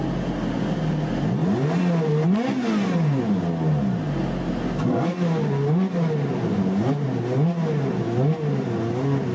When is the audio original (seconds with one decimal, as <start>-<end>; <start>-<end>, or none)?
0.0-9.3